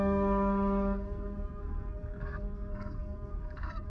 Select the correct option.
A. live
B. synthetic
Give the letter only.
B